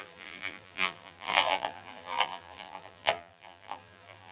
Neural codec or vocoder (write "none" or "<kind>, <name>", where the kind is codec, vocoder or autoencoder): vocoder, BigVGAN v2